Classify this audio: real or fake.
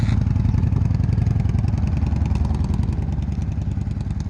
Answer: real